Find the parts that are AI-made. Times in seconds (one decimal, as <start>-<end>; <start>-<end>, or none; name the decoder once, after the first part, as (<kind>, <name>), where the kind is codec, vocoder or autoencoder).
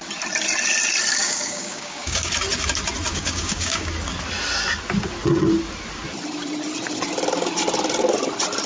1.2-2.3 (codec, DAC); 3.1-3.9